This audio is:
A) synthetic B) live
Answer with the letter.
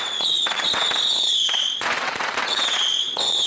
A